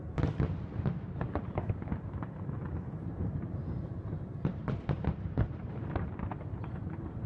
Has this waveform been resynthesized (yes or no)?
yes